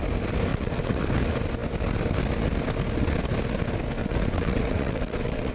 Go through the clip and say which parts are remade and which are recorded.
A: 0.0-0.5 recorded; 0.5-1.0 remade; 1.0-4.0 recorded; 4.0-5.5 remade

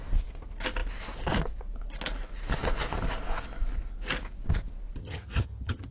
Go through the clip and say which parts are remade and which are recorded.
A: 0.0-5.0 recorded; 5.0-5.9 remade

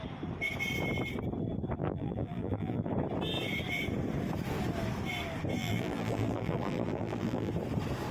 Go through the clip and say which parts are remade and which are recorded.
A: 0.0-1.8 recorded; 1.8-2.9 remade; 2.9-5.6 recorded; 5.6-7.5 remade; 7.5-8.1 recorded

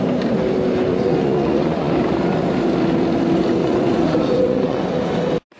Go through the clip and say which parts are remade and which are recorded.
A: 0.0-0.9 recorded; 0.9-1.9 remade; 1.9-3.6 recorded; 3.6-4.9 remade; 4.9-5.6 recorded

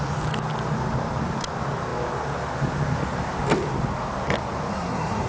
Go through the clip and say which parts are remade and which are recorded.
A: 0.0-4.7 recorded; 4.7-5.3 remade

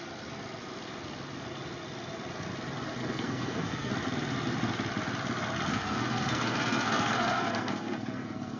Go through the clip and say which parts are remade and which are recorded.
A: 0.0-3.0 recorded; 3.0-3.9 remade; 3.9-5.7 recorded; 5.7-8.6 remade

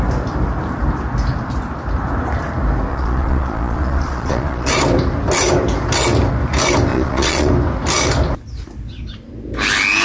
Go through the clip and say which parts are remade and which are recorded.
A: 0.0-2.9 recorded; 2.9-4.7 remade; 4.7-6.9 recorded; 6.9-7.5 remade; 7.5-10.0 recorded

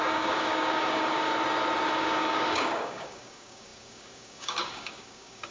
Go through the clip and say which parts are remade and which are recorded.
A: 0.0-1.3 remade; 1.3-2.0 recorded; 2.0-5.5 remade